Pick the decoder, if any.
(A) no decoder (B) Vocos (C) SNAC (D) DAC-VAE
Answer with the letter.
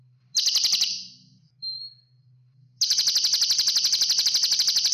A